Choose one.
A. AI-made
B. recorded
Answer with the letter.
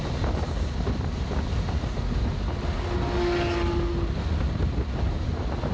B